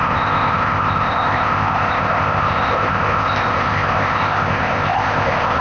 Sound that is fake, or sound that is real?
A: fake